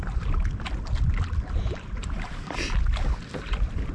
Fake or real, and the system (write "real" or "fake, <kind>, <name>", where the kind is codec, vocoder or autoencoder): fake, vocoder, BigVGAN v2